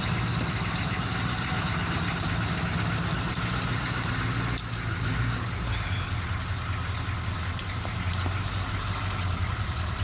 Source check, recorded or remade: recorded